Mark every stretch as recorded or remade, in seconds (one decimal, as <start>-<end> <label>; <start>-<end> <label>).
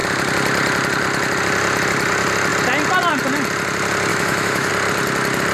0.0-4.1 recorded; 4.1-4.7 remade; 4.7-5.5 recorded